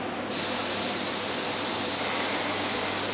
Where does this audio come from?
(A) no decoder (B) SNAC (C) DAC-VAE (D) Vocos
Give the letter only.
A